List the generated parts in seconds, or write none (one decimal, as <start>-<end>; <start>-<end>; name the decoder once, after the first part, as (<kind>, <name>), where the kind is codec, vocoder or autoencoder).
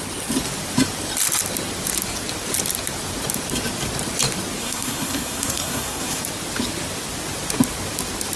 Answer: 4.6-6.2 (codec, SNAC)